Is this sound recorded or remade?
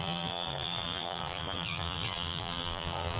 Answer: remade